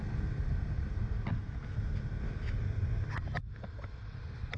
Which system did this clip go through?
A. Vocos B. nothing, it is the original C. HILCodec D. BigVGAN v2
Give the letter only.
B